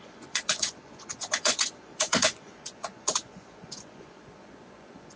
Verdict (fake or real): fake